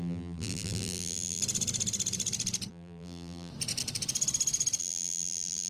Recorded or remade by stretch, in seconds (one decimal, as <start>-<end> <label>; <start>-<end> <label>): 0.0-1.4 remade; 1.4-2.7 recorded; 2.7-3.5 remade; 3.5-4.8 recorded; 4.8-5.7 remade